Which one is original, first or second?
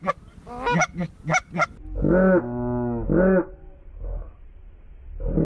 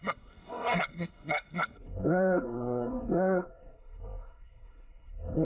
first